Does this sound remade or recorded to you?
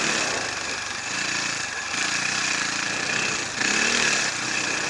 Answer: recorded